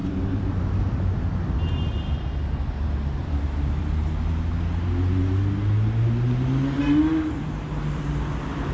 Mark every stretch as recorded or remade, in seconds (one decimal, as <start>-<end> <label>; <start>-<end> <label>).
0.0-1.4 remade; 1.4-3.2 recorded; 3.2-3.8 remade; 3.8-8.7 recorded